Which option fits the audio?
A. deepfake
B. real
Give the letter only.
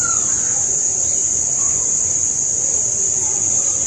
A